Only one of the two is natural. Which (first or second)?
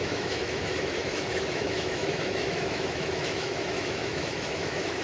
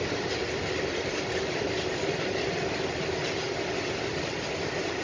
second